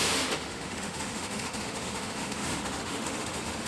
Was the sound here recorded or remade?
remade